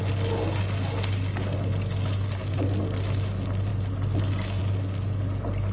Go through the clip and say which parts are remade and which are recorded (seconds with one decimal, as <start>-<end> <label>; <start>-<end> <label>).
0.0-5.7 recorded